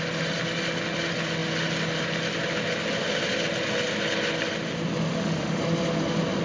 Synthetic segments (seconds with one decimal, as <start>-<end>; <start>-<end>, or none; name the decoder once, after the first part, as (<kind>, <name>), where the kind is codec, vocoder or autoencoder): 5.1-5.6 (autoencoder, DAC-VAE)